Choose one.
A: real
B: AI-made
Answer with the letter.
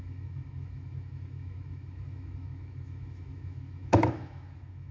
B